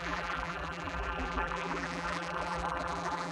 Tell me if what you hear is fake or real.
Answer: fake